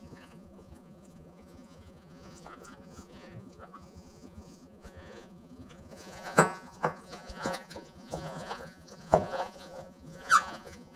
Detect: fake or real fake